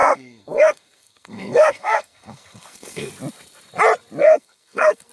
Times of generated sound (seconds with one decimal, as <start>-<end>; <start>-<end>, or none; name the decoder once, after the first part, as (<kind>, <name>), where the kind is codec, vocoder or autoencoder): 0.0-3.1 (codec, SNAC); 4.2-5.1